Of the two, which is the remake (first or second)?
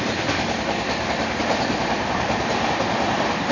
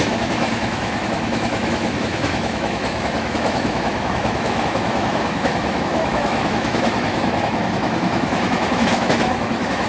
second